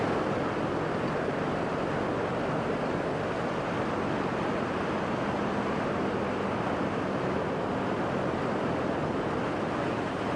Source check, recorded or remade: recorded